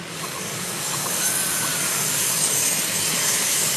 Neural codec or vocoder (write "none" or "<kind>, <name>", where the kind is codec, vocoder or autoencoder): codec, DAC